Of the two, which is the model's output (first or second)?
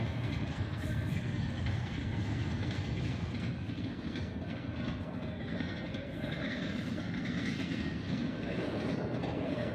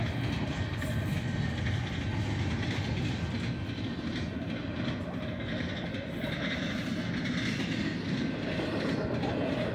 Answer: first